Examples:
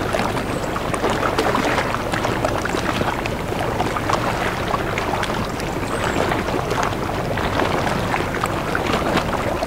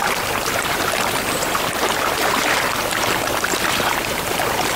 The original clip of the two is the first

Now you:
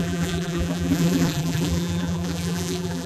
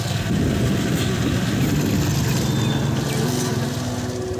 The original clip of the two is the second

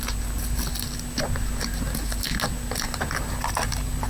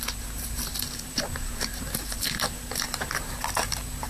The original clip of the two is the first